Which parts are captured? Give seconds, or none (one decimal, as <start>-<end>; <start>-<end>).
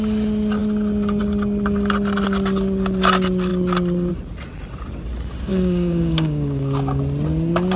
0.0-5.5; 7.0-7.8